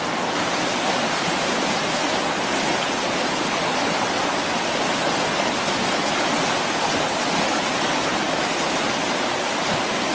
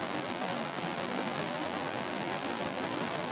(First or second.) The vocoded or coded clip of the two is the second